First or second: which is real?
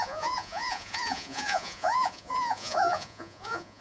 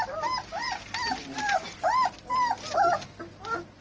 second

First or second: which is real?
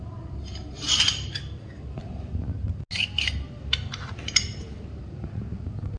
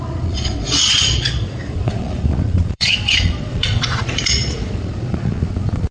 first